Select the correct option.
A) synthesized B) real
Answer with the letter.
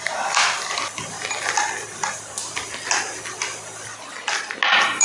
B